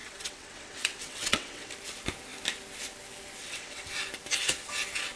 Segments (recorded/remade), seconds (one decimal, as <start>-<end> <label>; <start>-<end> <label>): 0.0-1.7 remade; 1.7-3.4 recorded; 3.4-3.9 remade; 3.9-5.2 recorded